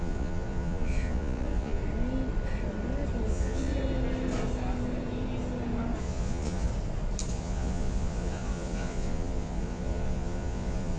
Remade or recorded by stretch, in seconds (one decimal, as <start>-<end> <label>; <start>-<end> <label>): 0.0-1.8 remade; 1.8-3.3 recorded; 3.3-3.7 remade; 3.7-6.0 recorded; 6.0-6.7 remade; 6.7-7.3 recorded; 7.3-11.0 remade